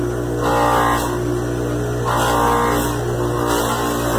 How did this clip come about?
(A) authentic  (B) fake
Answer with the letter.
A